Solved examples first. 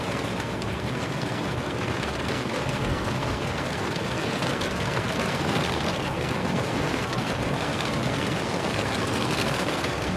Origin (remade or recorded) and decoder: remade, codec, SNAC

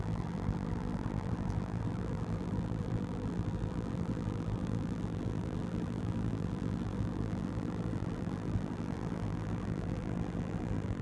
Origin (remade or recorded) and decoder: remade, vocoder, BigVGAN v2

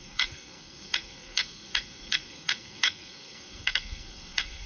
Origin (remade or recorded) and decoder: remade, codec, SNAC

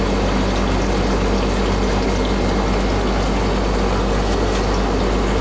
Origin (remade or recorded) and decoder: recorded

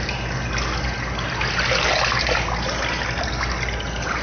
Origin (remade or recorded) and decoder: recorded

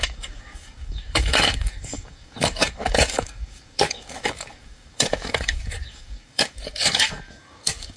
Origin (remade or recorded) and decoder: remade, codec, DAC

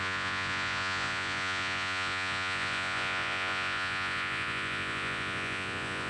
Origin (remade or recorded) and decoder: remade, vocoder, Vocos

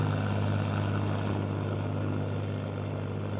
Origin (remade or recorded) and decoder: recorded